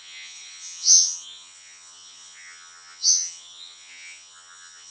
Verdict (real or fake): fake